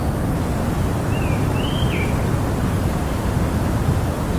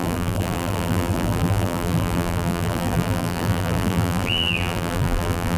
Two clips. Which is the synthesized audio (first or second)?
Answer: second